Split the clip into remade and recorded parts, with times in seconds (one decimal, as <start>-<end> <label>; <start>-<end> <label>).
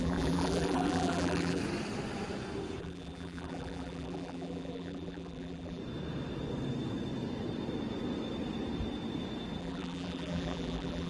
0.0-1.6 remade; 1.6-2.8 recorded; 2.8-5.8 remade; 5.8-9.6 recorded; 9.6-11.1 remade